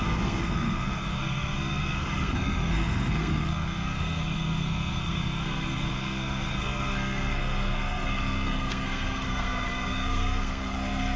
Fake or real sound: fake